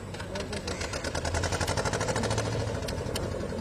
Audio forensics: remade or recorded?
recorded